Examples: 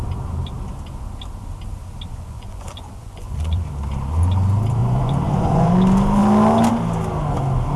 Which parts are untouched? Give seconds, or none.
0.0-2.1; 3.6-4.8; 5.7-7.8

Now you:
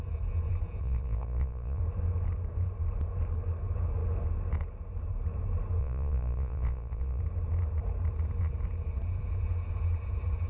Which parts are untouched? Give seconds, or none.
0.0-0.8; 1.8-5.8; 7.2-10.5

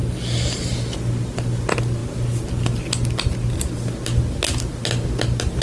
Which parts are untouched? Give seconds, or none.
0.0-5.6

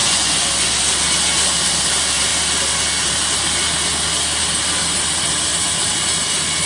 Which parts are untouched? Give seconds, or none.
0.7-6.7